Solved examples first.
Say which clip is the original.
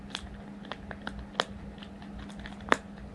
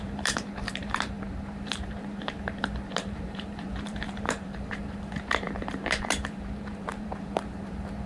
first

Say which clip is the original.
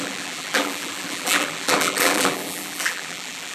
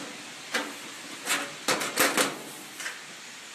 second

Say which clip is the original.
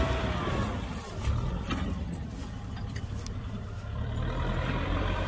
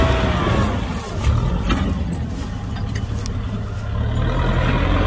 second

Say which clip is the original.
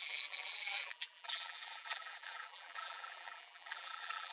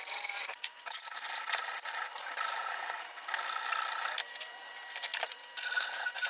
second